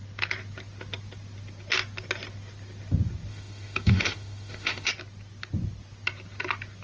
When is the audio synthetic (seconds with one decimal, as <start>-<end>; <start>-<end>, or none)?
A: 3.3-4.9